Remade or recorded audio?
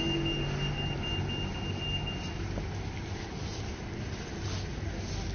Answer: recorded